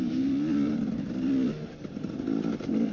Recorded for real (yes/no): yes